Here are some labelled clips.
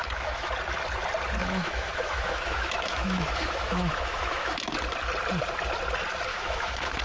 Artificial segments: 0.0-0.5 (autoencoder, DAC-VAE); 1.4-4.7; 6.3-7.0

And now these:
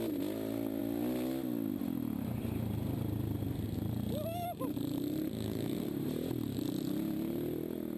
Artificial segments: none

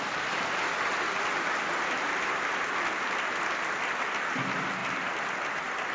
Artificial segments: none

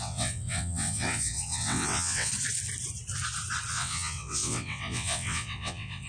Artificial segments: 0.0-2.3 (vocoder, WaveNeXt); 3.7-6.1

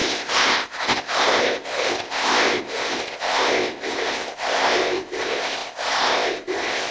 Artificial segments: 0.0-6.9 (codec, ZipCodec)

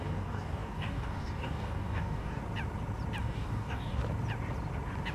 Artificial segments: 0.0-2.4 (codec, DAC); 3.2-4.0